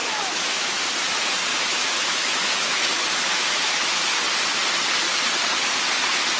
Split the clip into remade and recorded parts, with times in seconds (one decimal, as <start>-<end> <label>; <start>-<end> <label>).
0.0-0.8 remade; 0.8-1.5 recorded; 1.5-4.2 remade; 4.2-6.4 recorded